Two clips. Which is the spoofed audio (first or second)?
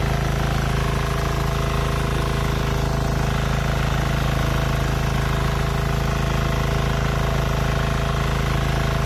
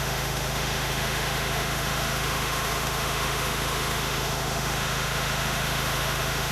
second